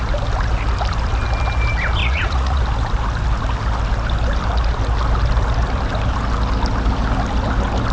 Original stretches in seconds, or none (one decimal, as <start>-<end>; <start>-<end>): 0.0-2.0; 2.6-7.9